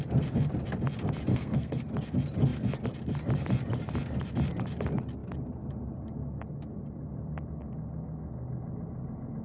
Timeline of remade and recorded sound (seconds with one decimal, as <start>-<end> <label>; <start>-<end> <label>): 0.0-1.3 recorded; 1.3-1.8 remade; 1.8-9.4 recorded